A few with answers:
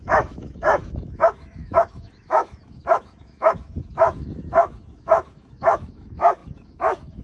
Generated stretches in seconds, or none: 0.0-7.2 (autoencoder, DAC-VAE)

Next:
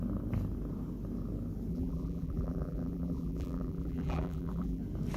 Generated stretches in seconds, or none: 1.7-4.8 (vocoder, BigVGAN v2)

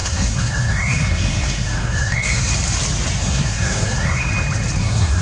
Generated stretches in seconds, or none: 0.0-2.5 (codec, SNAC); 3.2-4.3; 4.8-5.2

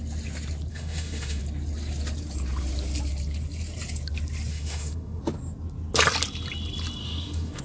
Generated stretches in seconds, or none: 0.7-1.4 (autoencoder, DAC-VAE); 4.5-5.2; 7.0-7.6

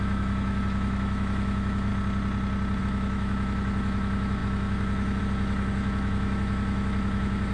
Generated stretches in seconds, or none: 0.0-1.9 (autoencoder, DAC-VAE); 2.8-7.5